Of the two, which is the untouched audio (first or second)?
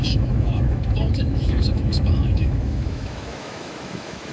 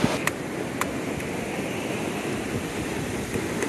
second